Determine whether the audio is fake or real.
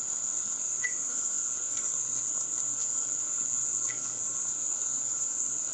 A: fake